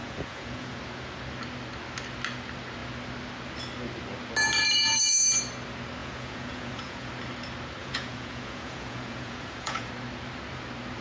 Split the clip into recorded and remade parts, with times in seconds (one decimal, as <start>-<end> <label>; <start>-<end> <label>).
0.0-0.8 remade; 0.8-6.0 recorded; 6.0-7.1 remade; 7.1-7.8 recorded; 7.8-9.9 remade; 9.9-11.0 recorded